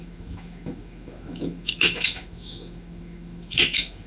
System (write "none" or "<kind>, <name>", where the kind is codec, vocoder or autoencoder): autoencoder, DAC-VAE